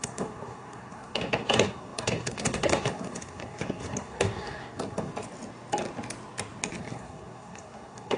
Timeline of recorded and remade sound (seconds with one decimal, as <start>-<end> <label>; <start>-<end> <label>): 0.0-5.1 remade; 5.1-6.8 recorded; 6.8-8.2 remade